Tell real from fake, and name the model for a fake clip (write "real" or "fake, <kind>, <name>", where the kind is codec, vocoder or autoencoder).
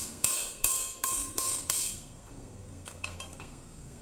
fake, codec, SNAC